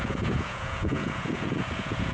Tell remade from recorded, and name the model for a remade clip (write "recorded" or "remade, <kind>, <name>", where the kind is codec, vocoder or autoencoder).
remade, vocoder, Vocos